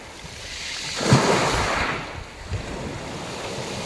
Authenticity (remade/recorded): recorded